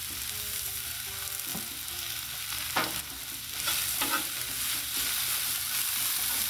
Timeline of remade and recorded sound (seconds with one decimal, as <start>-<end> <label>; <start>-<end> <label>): 0.0-0.6 remade; 0.6-1.5 recorded; 1.5-3.0 remade; 3.0-3.8 recorded; 3.8-4.5 remade; 4.5-6.5 recorded